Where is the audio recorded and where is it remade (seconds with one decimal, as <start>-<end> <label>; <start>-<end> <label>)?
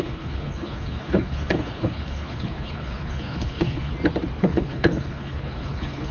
0.0-3.9 remade; 3.9-4.4 recorded; 4.4-6.1 remade